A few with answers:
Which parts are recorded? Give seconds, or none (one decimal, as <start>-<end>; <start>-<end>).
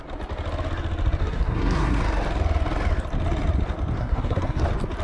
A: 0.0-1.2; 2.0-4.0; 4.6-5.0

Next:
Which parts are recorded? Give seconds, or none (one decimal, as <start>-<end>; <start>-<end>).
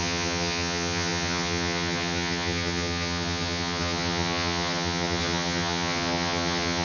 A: none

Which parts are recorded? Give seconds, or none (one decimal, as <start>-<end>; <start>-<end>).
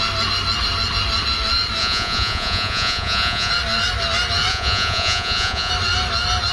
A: 0.0-1.8; 3.5-4.5; 5.7-6.5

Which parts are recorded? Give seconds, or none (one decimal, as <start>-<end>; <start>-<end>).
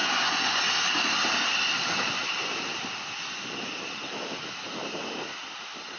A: 0.6-6.0